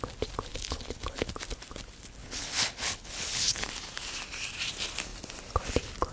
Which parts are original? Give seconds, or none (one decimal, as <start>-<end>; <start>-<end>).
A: 0.0-0.5; 1.3-2.2; 3.7-6.1